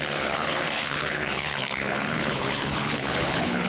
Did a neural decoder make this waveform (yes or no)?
yes